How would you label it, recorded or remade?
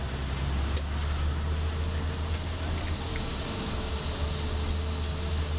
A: recorded